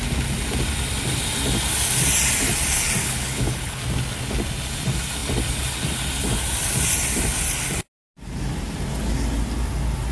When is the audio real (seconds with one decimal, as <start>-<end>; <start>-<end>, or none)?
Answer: 0.0-3.0; 3.8-10.1